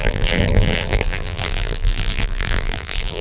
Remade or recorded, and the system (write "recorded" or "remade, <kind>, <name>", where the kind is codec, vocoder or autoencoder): remade, vocoder, BigVGAN v2